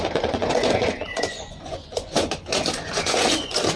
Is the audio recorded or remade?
remade